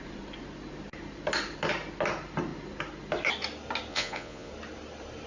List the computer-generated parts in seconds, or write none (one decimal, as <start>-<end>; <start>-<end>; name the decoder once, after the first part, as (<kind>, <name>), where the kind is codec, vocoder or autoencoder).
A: 3.9-4.5 (vocoder, Vocos)